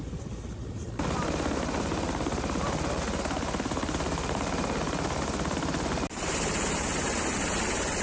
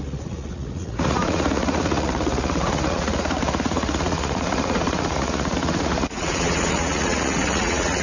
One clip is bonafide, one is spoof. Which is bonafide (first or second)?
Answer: first